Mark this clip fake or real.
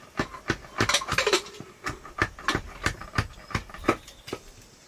real